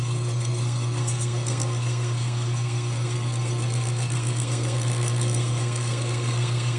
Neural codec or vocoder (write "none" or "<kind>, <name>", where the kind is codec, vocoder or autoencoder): codec, SNAC